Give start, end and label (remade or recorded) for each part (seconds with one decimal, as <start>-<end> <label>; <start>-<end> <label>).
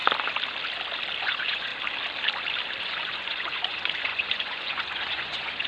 0.0-1.2 recorded; 1.2-1.7 remade; 1.7-2.8 recorded; 2.8-5.7 remade